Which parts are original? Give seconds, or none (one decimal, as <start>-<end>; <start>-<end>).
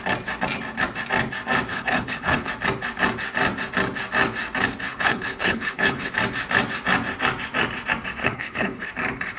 0.0-1.7; 2.5-4.9; 6.1-8.2; 8.9-9.4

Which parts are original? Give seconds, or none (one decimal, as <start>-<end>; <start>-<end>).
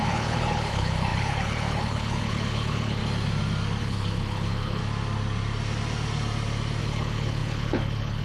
3.0-3.8; 4.8-6.8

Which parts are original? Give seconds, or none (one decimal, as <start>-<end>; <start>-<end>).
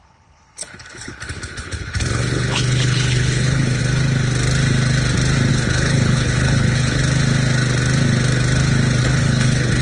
3.8-5.5; 7.0-9.0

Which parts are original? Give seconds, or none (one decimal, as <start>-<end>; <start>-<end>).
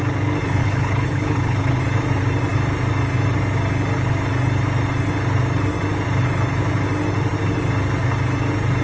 0.0-0.6; 1.8-8.8